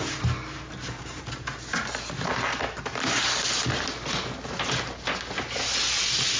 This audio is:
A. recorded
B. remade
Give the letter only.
A